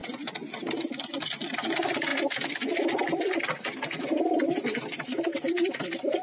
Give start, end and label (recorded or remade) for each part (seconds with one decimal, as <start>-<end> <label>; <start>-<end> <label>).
0.0-2.1 recorded; 2.1-5.8 remade; 5.8-6.2 recorded